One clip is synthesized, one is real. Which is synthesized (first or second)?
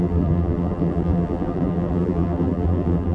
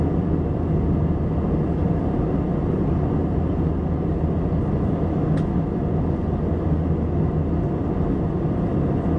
first